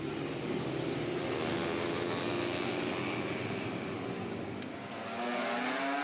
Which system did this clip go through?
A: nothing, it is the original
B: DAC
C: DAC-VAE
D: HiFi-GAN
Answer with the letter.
A